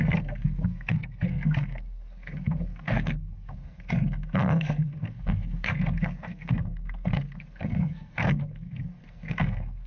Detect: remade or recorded remade